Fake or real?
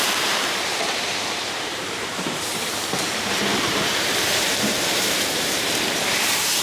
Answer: fake